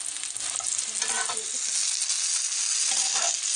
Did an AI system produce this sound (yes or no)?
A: no